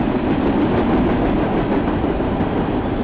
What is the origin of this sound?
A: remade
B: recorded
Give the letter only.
B